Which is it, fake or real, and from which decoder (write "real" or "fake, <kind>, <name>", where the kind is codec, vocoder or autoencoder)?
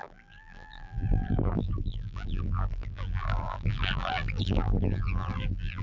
fake, vocoder, BigVGAN v2